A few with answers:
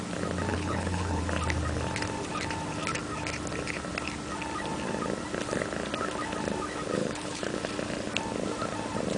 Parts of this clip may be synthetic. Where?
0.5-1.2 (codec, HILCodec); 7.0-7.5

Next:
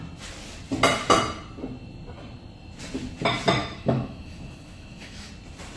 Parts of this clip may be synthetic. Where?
3.6-5.3 (autoencoder, DAC-VAE)

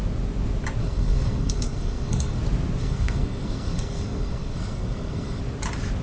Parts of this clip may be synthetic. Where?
0.8-2.4 (codec, SNAC); 2.8-5.4

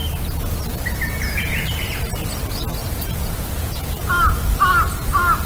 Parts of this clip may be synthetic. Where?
2.8-4.1 (vocoder, Vocos)

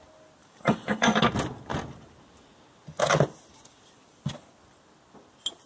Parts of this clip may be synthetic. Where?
0.4-1.2 (vocoder, BigVGAN v2)

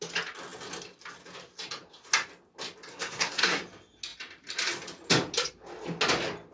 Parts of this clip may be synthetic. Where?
2.9-3.6 (codec, SNAC)

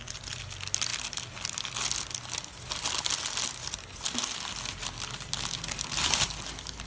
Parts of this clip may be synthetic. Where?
none

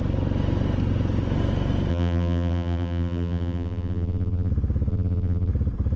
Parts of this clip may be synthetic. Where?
1.9-4.5 (vocoder, BigVGAN v2); 4.9-5.5